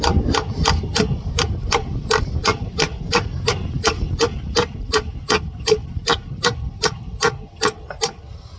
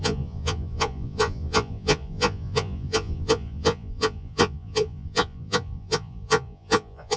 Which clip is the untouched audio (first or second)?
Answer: first